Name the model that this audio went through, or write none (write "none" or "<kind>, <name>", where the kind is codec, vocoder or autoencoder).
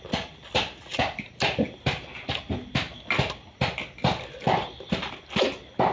none